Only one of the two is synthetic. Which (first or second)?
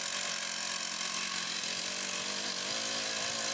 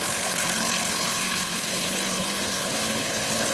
second